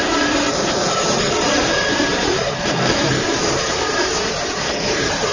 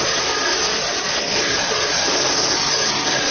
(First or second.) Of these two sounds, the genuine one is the second